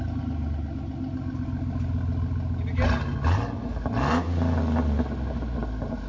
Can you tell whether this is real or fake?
real